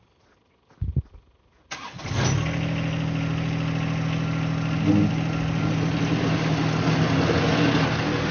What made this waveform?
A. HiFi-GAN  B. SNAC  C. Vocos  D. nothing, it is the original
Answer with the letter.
D